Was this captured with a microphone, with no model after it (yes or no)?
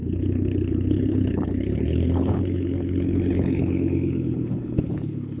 no